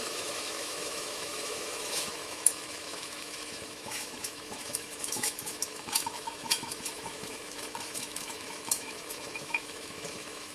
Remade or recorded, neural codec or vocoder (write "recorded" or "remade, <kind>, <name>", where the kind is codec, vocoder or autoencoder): remade, autoencoder, DAC-VAE